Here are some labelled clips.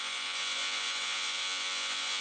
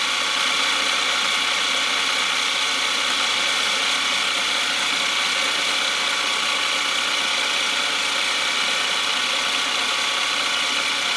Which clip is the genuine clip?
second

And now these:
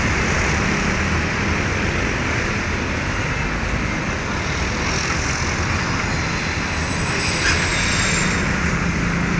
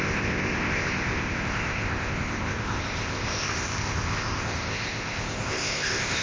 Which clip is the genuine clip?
first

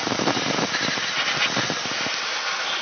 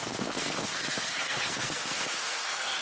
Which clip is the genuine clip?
first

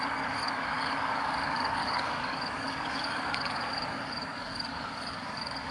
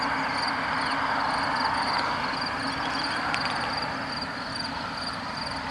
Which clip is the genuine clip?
second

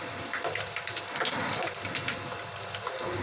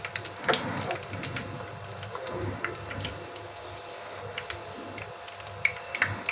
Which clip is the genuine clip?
second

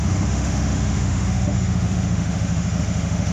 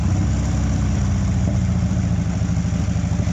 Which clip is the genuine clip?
second